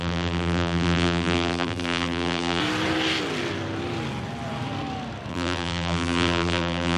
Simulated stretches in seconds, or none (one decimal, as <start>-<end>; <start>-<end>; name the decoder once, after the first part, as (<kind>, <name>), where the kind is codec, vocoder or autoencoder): 0.0-2.6 (vocoder, BigVGAN v2); 5.3-7.0